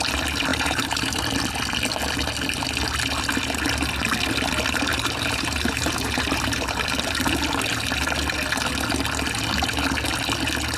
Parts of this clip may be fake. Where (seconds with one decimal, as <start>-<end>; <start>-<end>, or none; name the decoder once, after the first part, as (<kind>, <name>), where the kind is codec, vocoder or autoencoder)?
0.5-1.2 (vocoder, BigVGAN v2); 4.9-6.9